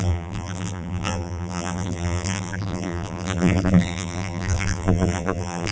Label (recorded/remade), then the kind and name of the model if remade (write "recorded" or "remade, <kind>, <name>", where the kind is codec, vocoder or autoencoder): remade, vocoder, BigVGAN v2